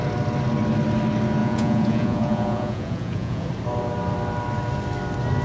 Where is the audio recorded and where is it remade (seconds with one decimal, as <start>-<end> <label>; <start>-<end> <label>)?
0.0-1.4 recorded; 1.4-3.5 remade; 3.5-5.4 recorded